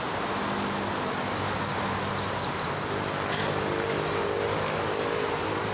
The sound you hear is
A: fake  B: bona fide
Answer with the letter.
B